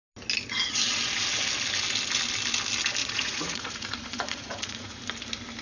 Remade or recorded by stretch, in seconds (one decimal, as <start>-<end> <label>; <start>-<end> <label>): 0.0-3.0 recorded; 3.0-5.0 remade; 5.0-5.6 recorded

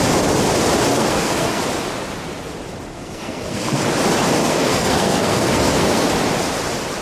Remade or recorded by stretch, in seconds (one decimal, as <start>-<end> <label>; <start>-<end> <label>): 0.0-0.9 recorded; 0.9-1.6 remade; 1.6-2.9 recorded; 2.9-3.8 remade; 3.8-4.4 recorded; 4.4-6.1 remade; 6.1-7.0 recorded

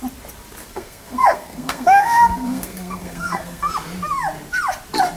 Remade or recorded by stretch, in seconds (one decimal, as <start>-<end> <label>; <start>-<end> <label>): 0.0-0.6 recorded; 0.6-3.7 remade; 3.7-5.2 recorded

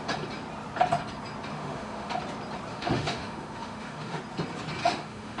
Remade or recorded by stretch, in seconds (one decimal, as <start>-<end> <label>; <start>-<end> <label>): 0.0-1.5 recorded; 1.5-2.1 remade; 2.1-2.7 recorded; 2.7-4.2 remade; 4.2-4.8 recorded; 4.8-5.4 remade

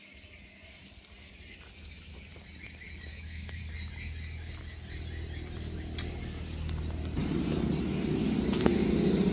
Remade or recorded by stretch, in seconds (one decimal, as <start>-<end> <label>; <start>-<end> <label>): 0.0-3.1 recorded; 3.1-3.6 remade; 3.6-9.3 recorded

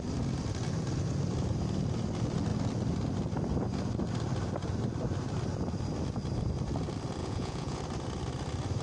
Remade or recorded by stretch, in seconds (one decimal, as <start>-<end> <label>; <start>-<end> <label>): 0.0-7.2 recorded; 7.2-7.8 remade; 7.8-8.8 recorded

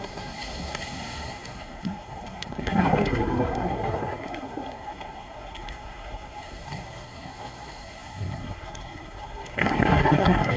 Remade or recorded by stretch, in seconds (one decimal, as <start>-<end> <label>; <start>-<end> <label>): 0.0-10.6 remade

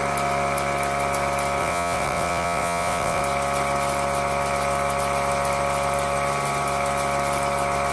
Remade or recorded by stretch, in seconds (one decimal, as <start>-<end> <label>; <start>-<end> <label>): 0.0-1.6 recorded; 1.6-3.2 remade; 3.2-7.9 recorded